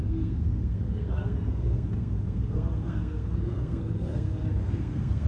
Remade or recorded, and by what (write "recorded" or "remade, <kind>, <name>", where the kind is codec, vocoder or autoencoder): remade, codec, SNAC